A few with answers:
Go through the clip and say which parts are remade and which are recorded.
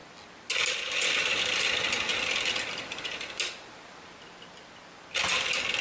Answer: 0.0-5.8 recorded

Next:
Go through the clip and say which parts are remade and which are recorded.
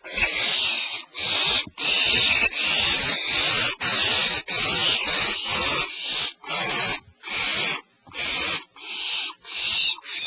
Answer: 0.0-10.3 recorded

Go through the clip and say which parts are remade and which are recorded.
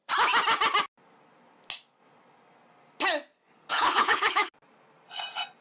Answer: 0.0-3.3 recorded; 3.3-4.5 remade; 4.5-5.6 recorded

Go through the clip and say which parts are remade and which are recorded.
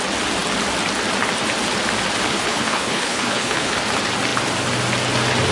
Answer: 0.0-2.3 recorded; 2.3-3.7 remade; 3.7-5.5 recorded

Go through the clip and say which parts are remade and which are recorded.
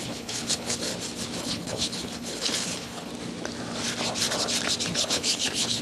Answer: 0.0-0.9 remade; 0.9-1.4 recorded; 1.4-3.1 remade; 3.1-5.0 recorded; 5.0-5.8 remade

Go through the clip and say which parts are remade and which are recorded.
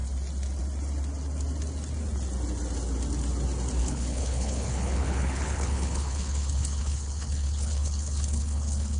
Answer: 0.0-3.8 recorded; 3.8-9.0 remade